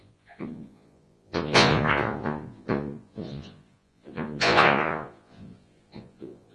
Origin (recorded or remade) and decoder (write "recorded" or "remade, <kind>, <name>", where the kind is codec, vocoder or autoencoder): remade, vocoder, Vocos